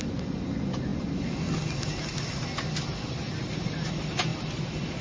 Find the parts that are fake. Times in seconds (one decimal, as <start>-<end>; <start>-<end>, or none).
none